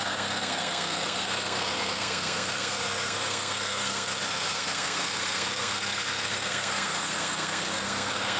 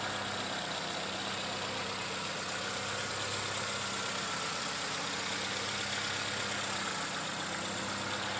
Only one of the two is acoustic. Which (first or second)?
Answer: second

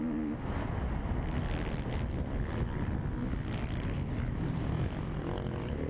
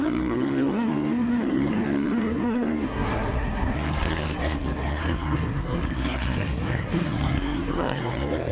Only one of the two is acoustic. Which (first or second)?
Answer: first